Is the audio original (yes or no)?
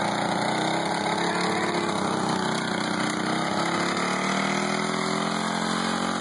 yes